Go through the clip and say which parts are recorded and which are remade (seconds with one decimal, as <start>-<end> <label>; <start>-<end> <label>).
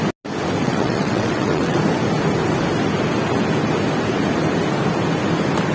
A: 0.0-0.6 recorded; 0.6-1.8 remade; 1.8-5.7 recorded